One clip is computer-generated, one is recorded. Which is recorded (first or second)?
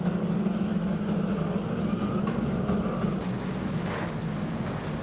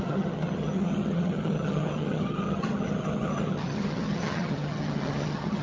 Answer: first